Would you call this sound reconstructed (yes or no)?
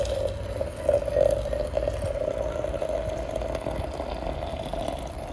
no